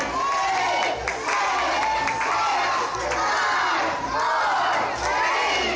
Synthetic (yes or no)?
no